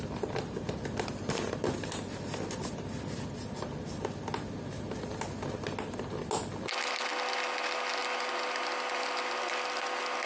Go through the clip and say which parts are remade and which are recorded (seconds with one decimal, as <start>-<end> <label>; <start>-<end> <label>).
0.0-10.3 recorded